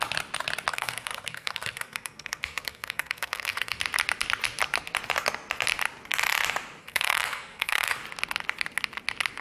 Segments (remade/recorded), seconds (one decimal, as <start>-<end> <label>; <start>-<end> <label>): 0.0-0.7 recorded; 0.7-3.8 remade; 3.8-6.8 recorded; 6.8-8.0 remade; 8.0-9.4 recorded